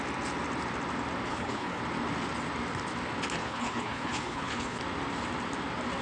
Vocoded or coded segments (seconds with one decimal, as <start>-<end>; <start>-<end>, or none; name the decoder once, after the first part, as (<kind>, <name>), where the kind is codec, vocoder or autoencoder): 1.3-1.8 (codec, HILCodec); 3.4-4.8

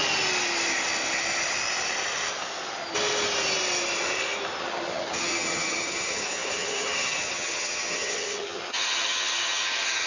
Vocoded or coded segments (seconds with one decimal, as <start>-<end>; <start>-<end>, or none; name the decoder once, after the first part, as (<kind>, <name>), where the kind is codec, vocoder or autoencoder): 4.6-10.1 (vocoder, HiFi-GAN)